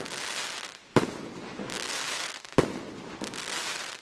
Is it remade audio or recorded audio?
recorded